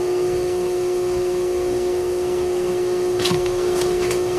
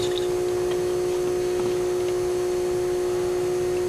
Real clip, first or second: second